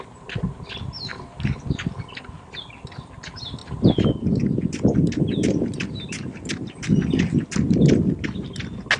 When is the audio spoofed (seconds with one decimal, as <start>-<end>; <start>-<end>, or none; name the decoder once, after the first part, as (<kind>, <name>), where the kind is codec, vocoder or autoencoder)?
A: 3.6-5.3 (vocoder, BigVGAN v2)